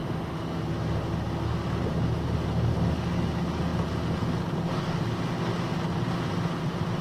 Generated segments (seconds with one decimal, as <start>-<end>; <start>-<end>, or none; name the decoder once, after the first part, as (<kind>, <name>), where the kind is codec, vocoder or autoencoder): 0.0-0.6 (autoencoder, DAC-VAE)